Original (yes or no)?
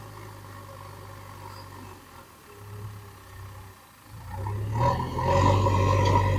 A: yes